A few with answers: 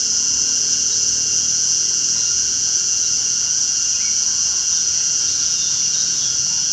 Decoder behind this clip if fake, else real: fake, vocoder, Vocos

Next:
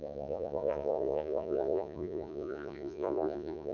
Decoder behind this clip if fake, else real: fake, vocoder, Vocos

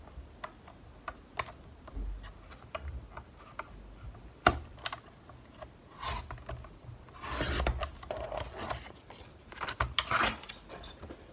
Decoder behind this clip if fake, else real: real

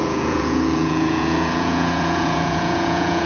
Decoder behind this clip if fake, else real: fake, vocoder, Vocos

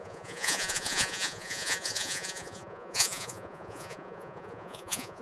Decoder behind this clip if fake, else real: fake, vocoder, Vocos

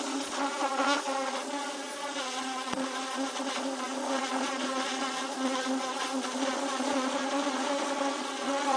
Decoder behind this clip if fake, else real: fake, vocoder, Vocos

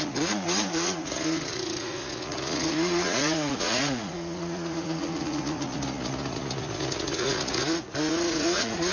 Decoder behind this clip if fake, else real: fake, vocoder, Vocos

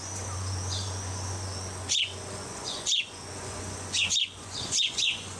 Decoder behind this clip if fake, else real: fake, vocoder, Vocos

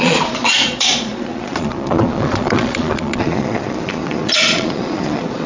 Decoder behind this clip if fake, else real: fake, vocoder, Vocos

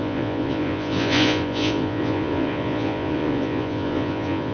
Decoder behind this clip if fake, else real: fake, vocoder, Vocos